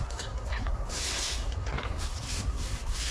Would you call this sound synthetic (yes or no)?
yes